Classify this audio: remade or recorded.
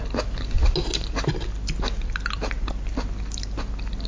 recorded